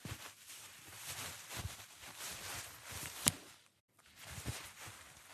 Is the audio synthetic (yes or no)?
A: yes